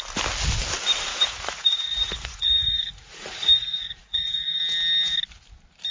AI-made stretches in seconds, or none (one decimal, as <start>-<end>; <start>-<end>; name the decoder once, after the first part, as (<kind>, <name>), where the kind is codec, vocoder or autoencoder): 1.1-4.6 (vocoder, Vocos)

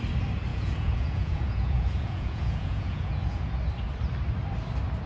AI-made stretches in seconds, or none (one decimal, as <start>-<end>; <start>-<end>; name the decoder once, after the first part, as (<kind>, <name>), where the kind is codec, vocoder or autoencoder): 0.5-3.6 (vocoder, Vocos)

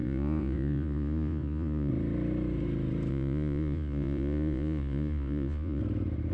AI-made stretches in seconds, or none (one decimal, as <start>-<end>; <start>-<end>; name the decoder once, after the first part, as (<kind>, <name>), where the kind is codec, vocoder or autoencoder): 0.0-1.9 (vocoder, Vocos); 3.1-5.8